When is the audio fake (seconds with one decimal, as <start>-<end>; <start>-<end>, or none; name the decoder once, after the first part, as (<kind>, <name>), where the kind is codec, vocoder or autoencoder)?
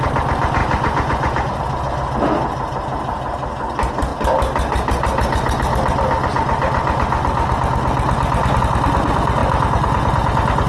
0.6-1.6 (vocoder, Vocos)